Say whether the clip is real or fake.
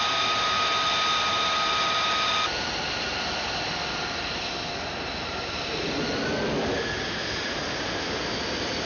real